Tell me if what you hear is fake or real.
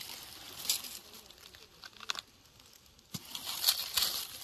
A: real